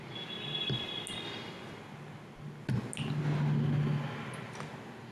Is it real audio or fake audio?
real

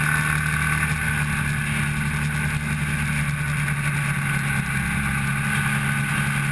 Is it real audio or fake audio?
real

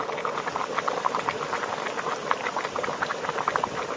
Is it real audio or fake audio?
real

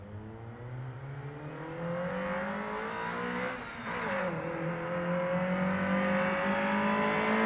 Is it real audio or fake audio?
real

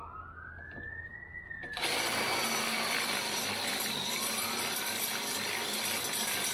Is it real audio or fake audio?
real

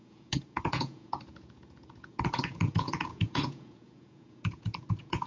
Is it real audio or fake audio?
fake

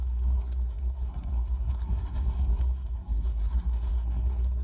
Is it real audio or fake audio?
fake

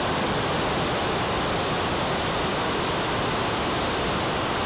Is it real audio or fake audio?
real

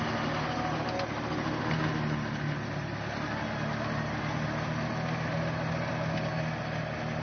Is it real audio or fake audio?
real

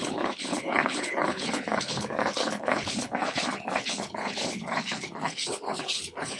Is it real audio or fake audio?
fake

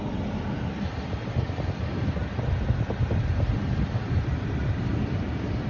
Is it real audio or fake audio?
real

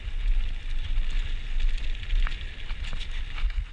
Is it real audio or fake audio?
real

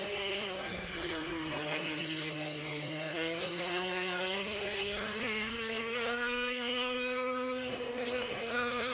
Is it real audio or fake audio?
fake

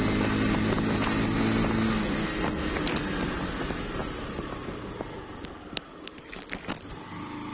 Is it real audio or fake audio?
real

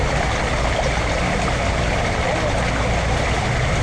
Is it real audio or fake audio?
real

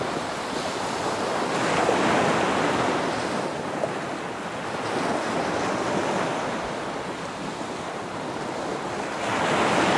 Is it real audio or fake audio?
real